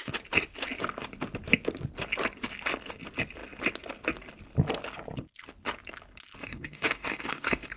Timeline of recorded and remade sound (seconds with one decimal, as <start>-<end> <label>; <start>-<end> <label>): 0.0-6.4 recorded; 6.4-7.8 remade